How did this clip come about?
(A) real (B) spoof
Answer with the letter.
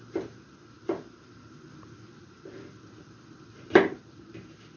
B